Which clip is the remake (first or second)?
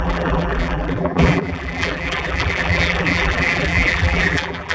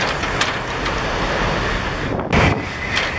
first